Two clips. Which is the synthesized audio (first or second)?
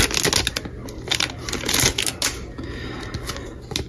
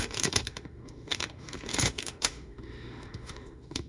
second